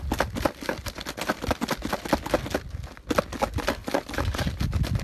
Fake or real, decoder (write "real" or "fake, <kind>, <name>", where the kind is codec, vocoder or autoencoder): real